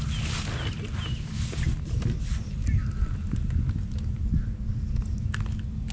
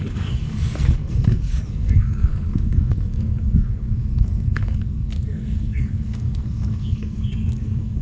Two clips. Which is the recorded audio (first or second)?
first